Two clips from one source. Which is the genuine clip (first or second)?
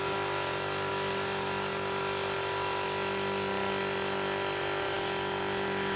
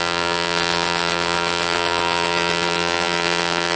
first